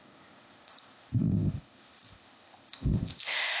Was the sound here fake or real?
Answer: fake